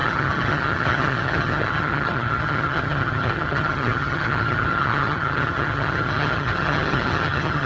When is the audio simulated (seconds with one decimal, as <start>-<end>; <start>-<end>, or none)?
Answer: 0.0-7.7